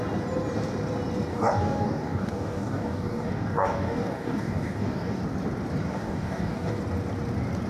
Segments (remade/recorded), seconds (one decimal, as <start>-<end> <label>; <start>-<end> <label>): 0.0-1.3 recorded; 1.3-5.2 remade; 5.2-5.9 recorded; 5.9-6.8 remade; 6.8-7.7 recorded